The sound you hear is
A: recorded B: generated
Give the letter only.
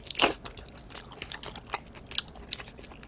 A